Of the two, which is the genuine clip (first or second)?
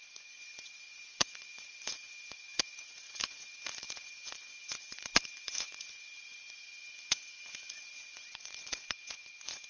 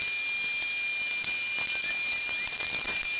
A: second